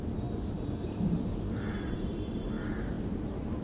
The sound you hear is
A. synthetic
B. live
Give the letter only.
A